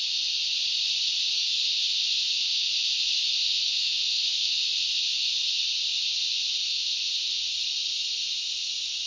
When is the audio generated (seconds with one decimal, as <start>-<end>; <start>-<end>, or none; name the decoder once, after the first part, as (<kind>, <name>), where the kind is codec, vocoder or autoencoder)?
1.3-2.7 (autoencoder, DAC-VAE); 3.4-4.6; 6.7-7.5